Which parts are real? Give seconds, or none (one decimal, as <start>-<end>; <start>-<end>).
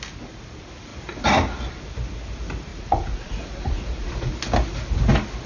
0.0-2.7; 4.3-5.5